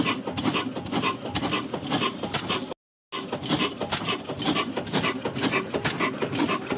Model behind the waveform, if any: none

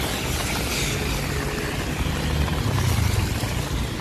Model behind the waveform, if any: none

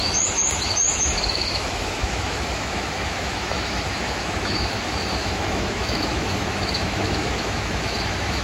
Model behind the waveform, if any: autoencoder, DAC-VAE